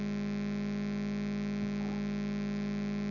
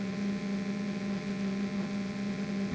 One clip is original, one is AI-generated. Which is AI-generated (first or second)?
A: second